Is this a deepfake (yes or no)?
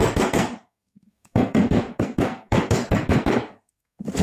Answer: yes